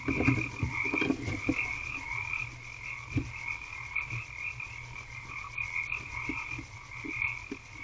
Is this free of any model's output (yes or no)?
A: yes